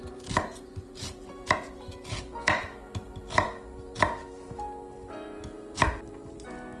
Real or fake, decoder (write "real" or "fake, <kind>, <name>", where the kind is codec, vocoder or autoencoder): real